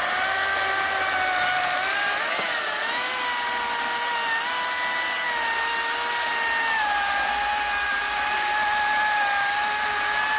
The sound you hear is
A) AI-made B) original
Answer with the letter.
B